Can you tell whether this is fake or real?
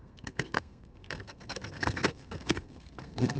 fake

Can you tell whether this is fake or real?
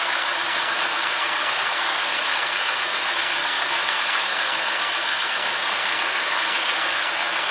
fake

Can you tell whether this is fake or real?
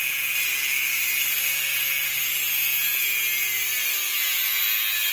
real